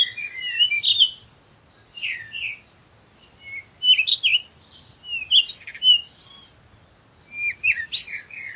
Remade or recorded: recorded